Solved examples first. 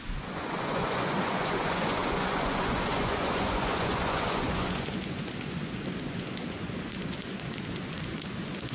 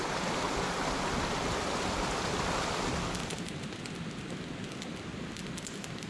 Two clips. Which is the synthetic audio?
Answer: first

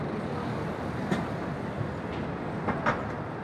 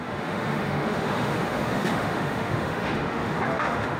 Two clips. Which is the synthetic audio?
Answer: second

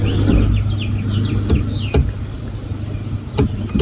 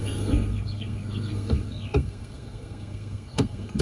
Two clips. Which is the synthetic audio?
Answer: second